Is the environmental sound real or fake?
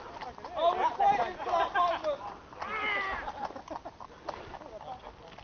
real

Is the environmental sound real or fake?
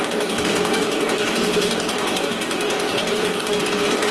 fake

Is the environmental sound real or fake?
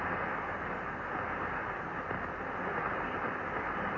real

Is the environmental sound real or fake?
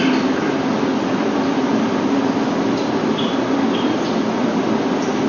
real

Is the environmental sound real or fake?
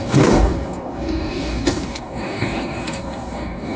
fake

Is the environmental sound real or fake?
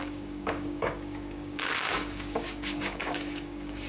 fake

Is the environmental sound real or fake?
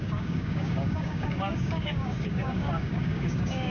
fake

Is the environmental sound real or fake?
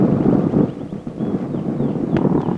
real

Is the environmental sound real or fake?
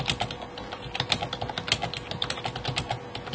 real